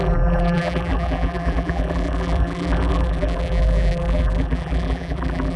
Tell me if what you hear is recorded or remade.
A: remade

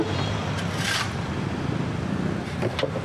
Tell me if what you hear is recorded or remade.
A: recorded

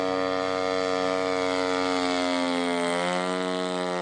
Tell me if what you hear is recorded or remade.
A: recorded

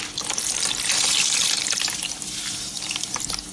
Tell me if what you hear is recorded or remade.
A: recorded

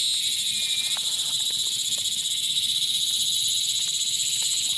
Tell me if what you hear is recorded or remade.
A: recorded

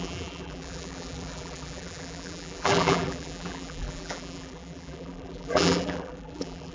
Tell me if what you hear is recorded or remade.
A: remade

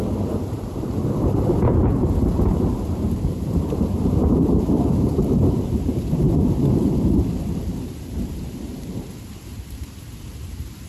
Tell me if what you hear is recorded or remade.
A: remade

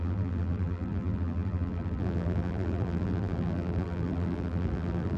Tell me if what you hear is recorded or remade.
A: remade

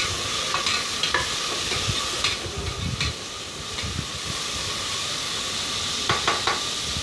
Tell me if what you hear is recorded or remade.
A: recorded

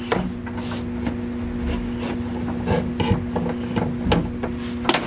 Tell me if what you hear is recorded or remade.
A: recorded